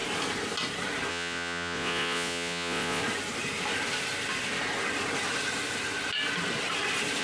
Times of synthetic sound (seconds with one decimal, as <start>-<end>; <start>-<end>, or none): 1.1-3.0